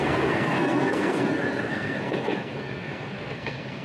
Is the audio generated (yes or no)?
yes